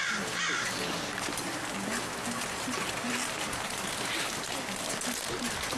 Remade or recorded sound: recorded